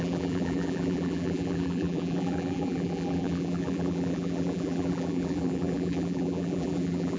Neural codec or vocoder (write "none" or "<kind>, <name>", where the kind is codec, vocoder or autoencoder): vocoder, BigVGAN v2